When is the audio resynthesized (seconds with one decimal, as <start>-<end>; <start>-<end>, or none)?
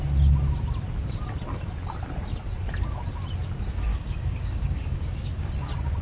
3.9-5.5